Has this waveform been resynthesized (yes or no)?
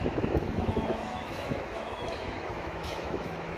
yes